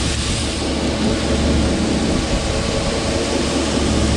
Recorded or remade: recorded